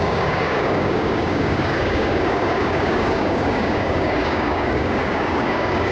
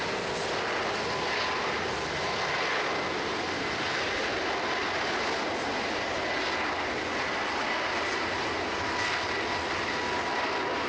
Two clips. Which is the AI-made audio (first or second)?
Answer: first